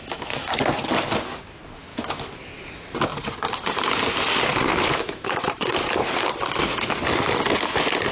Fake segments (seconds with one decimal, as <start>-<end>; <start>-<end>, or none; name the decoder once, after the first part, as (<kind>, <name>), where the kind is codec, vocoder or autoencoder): 0.0-0.6 (autoencoder, DAC-VAE); 1.9-2.4; 4.7-5.7